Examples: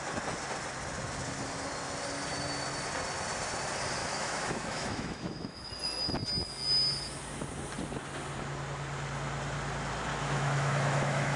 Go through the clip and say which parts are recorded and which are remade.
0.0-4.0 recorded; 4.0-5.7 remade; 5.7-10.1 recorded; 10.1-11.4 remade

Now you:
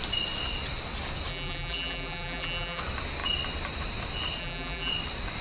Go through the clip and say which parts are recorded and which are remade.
0.0-1.3 recorded; 1.3-2.8 remade; 2.8-4.4 recorded; 4.4-4.9 remade; 4.9-5.4 recorded